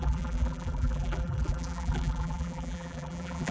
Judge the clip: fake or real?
fake